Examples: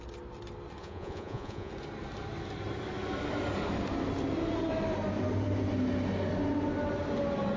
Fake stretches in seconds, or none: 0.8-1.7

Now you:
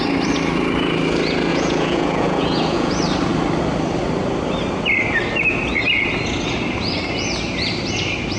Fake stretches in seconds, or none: 1.5-2.9